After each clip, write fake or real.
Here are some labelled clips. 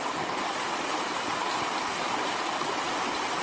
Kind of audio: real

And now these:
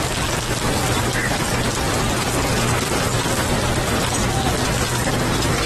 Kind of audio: real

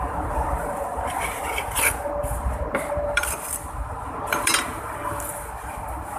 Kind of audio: fake